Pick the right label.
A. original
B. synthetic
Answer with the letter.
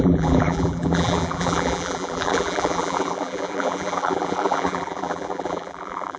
B